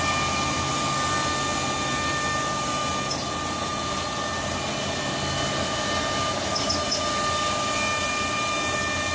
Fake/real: real